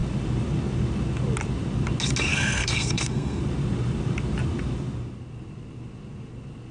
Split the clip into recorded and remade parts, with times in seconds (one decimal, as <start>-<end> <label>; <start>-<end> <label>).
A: 0.0-2.3 recorded; 2.3-3.4 remade; 3.4-6.7 recorded